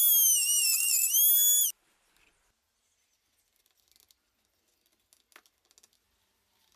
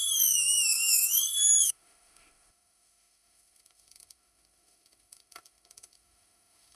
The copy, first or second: second